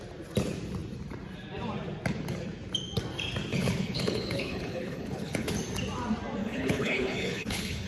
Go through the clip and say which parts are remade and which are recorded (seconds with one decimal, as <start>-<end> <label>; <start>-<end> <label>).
0.0-3.5 recorded; 3.5-5.5 remade; 5.5-6.4 recorded; 6.4-7.9 remade